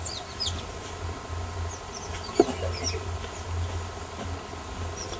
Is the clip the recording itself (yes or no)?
yes